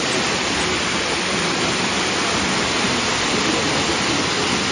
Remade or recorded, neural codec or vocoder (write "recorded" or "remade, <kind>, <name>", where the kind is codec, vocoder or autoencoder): remade, vocoder, BigVGAN v2